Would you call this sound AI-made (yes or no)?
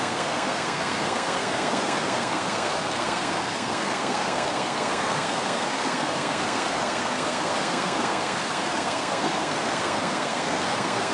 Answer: yes